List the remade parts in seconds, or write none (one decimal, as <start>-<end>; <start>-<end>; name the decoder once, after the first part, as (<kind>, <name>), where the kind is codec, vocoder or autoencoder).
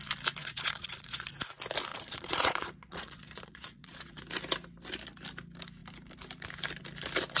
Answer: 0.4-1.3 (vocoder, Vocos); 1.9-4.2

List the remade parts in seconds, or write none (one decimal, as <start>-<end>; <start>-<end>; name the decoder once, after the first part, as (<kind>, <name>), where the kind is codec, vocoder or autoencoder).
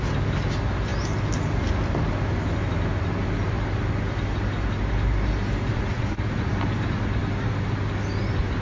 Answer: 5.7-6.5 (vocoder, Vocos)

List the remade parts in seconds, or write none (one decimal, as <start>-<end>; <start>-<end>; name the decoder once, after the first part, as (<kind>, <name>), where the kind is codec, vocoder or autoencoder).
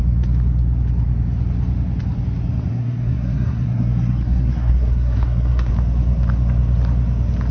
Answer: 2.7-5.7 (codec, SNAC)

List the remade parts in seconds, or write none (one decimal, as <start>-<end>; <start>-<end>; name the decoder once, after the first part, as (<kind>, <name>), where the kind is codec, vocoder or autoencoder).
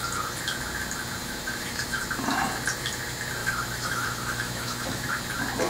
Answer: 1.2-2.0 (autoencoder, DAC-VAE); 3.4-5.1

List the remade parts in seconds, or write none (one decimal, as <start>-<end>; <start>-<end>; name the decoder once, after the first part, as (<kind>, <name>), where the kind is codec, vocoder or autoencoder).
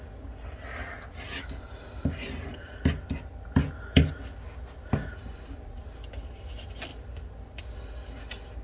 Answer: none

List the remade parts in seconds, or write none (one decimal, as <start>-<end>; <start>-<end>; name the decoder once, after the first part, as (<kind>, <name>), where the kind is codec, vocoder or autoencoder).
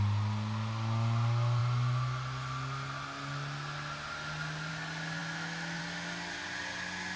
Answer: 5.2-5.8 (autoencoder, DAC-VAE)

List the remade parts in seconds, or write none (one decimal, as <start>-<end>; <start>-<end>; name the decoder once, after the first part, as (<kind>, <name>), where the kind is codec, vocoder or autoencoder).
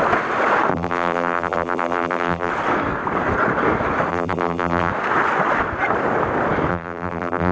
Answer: 0.7-2.5 (vocoder, BigVGAN v2); 4.1-4.9; 6.7-7.5